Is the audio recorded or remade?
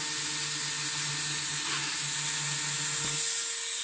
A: recorded